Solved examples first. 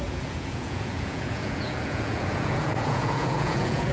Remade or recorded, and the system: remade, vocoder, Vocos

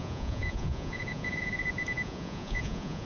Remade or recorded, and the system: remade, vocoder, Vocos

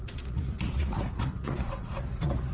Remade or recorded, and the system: remade, vocoder, Vocos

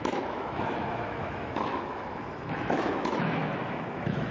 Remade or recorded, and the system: remade, autoencoder, DAC-VAE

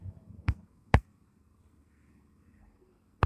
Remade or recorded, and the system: remade, codec, SNAC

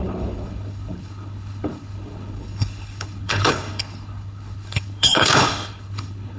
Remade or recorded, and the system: remade, codec, HILCodec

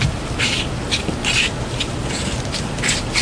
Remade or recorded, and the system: recorded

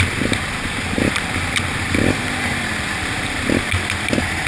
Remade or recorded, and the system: remade, vocoder, BigVGAN v2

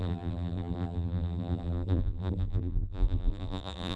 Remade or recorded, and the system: remade, vocoder, BigVGAN v2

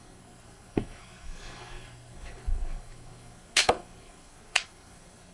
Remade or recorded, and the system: remade, codec, SNAC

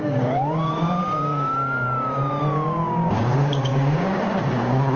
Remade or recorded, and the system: remade, codec, DAC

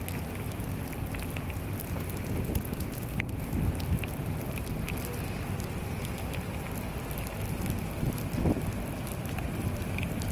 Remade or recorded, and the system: recorded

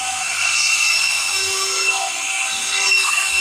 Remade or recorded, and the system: remade, codec, SNAC